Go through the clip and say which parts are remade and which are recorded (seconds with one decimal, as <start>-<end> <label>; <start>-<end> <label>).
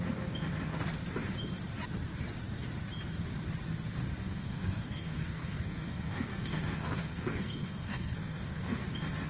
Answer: 0.0-4.2 recorded; 4.2-8.8 remade; 8.8-9.3 recorded